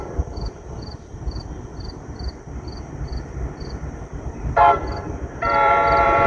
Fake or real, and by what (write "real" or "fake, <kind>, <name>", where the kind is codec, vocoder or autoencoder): fake, vocoder, BigVGAN v2